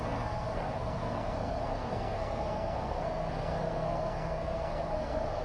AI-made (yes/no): yes